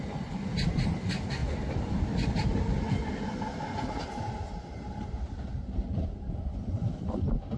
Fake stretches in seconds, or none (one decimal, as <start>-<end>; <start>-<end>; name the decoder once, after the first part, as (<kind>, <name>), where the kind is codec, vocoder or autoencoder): 0.0-1.4 (vocoder, BigVGAN v2); 2.3-3.0; 4.1-7.6